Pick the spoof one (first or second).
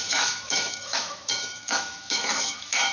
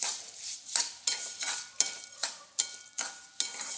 first